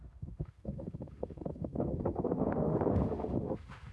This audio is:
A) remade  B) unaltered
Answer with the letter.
A